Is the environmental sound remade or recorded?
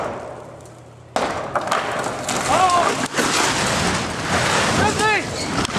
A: recorded